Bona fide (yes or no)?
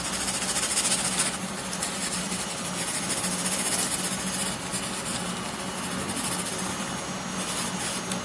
yes